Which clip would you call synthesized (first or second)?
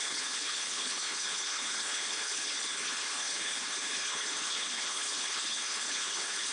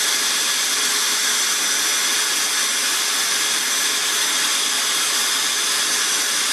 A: first